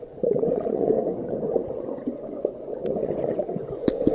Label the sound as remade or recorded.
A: remade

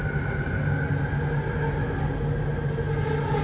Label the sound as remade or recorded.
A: recorded